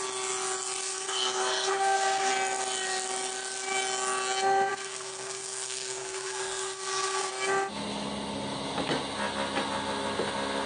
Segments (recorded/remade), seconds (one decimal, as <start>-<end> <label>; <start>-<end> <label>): 0.0-0.9 recorded; 0.9-2.3 remade; 2.3-4.7 recorded; 4.7-7.3 remade; 7.3-10.7 recorded